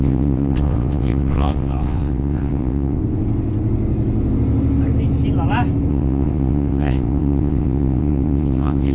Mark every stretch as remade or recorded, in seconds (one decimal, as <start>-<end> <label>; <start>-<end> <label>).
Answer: 0.0-3.0 remade; 3.0-5.9 recorded; 5.9-8.9 remade